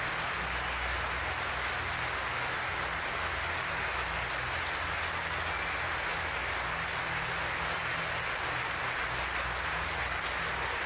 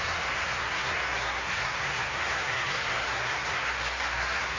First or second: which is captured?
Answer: first